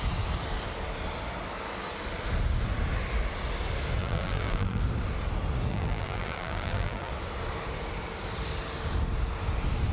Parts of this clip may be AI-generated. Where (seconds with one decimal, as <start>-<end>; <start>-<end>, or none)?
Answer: 4.0-4.8; 5.7-7.1